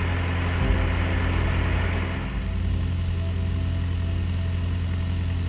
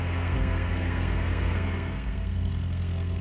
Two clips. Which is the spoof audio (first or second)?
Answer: second